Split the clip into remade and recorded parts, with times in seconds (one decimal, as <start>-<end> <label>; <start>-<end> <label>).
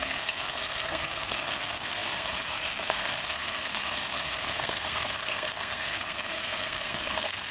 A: 0.0-7.5 remade